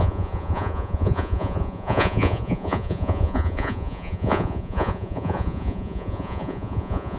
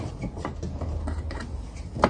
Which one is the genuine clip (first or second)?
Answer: second